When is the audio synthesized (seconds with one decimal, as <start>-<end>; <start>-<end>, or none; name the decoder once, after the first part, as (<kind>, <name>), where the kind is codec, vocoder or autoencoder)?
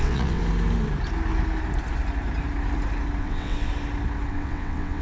0.0-0.4 (vocoder, WaveNeXt); 3.2-3.7; 4.3-5.0